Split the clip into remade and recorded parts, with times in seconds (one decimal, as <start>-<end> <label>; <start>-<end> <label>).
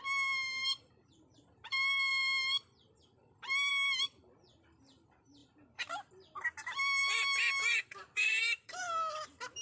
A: 0.0-5.4 recorded; 5.4-6.1 remade; 6.1-7.0 recorded; 7.0-8.8 remade; 8.8-9.6 recorded